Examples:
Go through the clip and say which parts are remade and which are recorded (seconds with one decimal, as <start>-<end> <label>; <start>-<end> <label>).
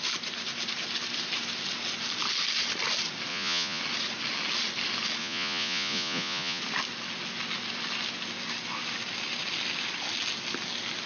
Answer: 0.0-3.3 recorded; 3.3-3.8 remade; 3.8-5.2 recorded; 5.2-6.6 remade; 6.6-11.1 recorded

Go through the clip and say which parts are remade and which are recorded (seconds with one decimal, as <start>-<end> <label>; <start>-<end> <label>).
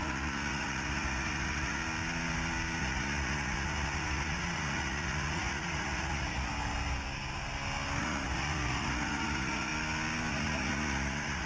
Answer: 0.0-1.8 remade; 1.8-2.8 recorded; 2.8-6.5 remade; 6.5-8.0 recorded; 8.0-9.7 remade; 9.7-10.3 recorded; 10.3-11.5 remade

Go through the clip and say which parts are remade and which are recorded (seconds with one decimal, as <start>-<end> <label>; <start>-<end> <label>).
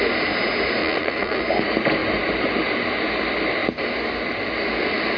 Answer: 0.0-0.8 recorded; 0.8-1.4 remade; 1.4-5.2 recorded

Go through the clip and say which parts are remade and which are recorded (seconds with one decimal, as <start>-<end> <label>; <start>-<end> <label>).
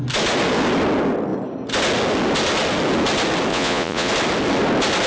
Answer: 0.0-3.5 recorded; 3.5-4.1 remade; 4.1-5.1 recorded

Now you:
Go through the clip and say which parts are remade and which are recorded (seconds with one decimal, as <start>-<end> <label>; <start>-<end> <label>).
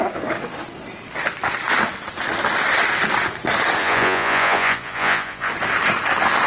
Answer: 0.0-3.8 recorded; 3.8-5.5 remade; 5.5-6.5 recorded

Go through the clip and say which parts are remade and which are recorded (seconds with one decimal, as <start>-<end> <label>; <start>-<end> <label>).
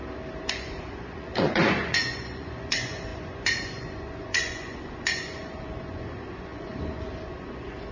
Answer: 0.0-0.5 recorded; 0.5-7.9 remade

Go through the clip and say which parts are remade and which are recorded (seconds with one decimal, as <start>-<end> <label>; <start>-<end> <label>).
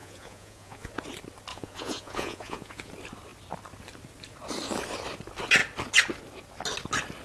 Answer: 0.0-0.9 remade; 0.9-1.5 recorded; 1.5-2.9 remade; 2.9-7.2 recorded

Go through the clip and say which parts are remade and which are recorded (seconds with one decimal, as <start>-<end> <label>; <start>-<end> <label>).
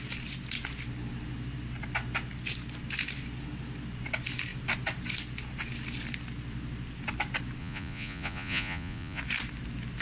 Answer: 0.0-7.6 recorded; 7.6-9.2 remade; 9.2-10.0 recorded